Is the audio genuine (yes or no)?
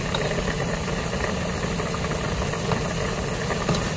yes